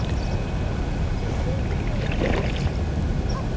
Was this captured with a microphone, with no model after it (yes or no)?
yes